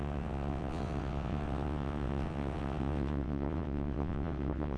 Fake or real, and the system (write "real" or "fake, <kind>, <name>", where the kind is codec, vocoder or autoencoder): fake, vocoder, WaveNeXt